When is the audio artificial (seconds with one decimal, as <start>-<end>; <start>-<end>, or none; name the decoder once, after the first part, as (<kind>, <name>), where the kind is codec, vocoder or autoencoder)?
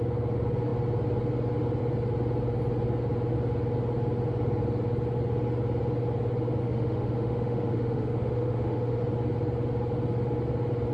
6.6-9.0 (autoencoder, DAC-VAE)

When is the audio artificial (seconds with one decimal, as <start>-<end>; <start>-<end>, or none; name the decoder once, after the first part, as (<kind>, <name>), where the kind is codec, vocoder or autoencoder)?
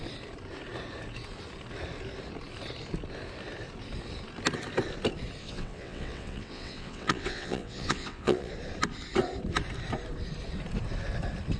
5.4-8.5 (vocoder, WaveNeXt)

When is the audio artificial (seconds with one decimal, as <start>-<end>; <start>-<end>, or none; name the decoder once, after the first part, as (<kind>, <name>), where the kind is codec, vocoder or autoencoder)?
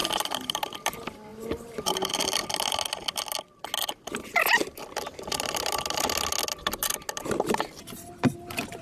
0.5-2.4 (vocoder, BigVGAN v2); 7.3-8.8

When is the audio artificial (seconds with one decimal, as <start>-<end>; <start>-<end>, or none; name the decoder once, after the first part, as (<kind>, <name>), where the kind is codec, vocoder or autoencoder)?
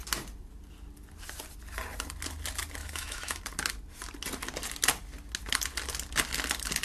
2.8-3.4 (autoencoder, DAC-VAE)